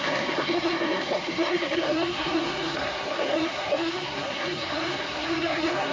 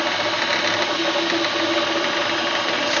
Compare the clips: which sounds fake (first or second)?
first